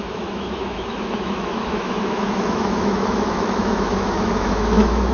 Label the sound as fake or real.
fake